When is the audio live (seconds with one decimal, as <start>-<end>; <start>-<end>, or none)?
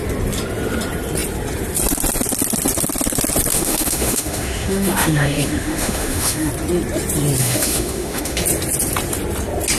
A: 0.0-3.5; 6.5-7.4; 8.4-9.8